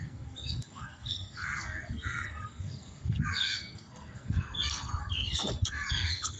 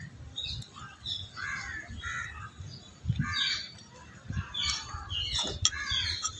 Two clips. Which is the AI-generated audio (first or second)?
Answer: first